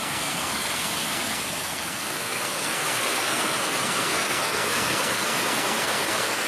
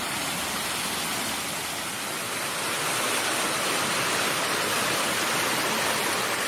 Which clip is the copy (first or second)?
first